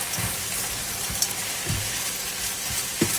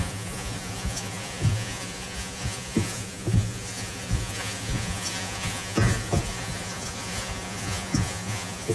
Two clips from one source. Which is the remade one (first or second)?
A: second